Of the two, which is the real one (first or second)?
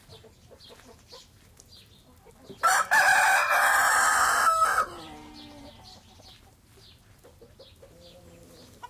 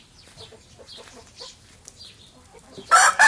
first